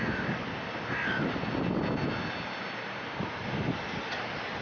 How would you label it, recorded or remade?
recorded